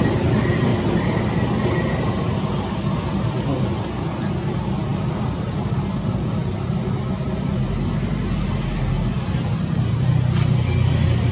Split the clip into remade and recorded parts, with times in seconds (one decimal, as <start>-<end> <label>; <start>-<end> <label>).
0.0-0.7 recorded; 0.7-1.2 remade; 1.2-4.9 recorded; 4.9-6.8 remade; 6.8-11.3 recorded